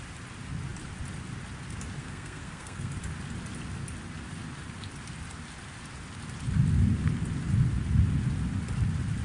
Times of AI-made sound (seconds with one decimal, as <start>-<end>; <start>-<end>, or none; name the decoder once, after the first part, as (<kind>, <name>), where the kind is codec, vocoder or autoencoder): 2.0-2.9 (codec, SNAC)